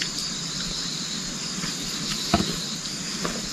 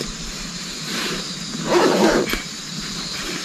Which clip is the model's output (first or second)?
second